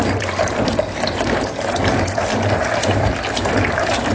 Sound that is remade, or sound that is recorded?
remade